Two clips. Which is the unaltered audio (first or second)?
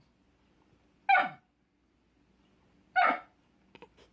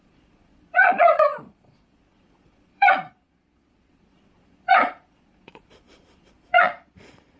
first